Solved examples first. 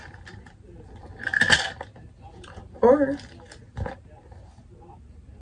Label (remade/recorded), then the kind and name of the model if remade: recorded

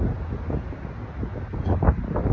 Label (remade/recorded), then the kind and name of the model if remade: recorded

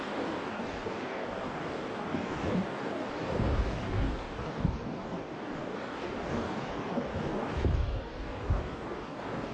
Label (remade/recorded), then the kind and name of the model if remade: remade, codec, DAC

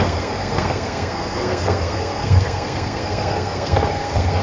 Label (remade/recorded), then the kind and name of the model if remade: remade, codec, SNAC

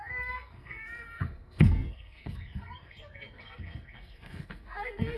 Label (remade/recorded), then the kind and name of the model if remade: remade, codec, SNAC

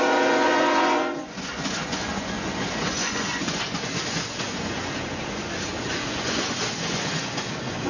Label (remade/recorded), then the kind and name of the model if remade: remade, vocoder, Vocos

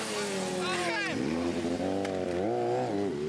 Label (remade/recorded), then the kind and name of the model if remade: recorded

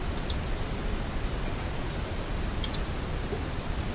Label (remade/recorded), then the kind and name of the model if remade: remade, vocoder, BigVGAN v2